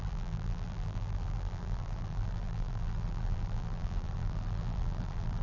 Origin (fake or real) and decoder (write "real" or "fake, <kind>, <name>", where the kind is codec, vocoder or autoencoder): fake, vocoder, BigVGAN v2